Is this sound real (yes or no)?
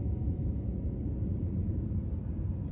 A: no